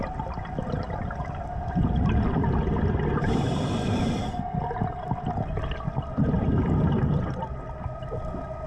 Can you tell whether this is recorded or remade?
recorded